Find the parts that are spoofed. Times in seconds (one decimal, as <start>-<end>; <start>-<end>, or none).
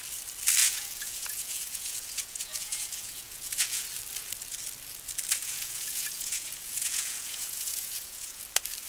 0.6-3.8; 5.4-8.4